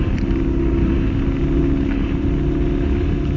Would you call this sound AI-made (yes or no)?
no